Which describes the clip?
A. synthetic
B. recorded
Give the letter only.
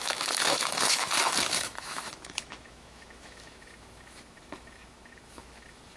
A